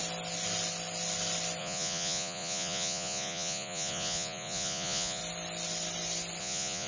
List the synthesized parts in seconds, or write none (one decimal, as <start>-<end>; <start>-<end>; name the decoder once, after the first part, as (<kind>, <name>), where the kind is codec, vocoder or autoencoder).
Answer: 1.6-5.2 (vocoder, Vocos); 6.4-6.9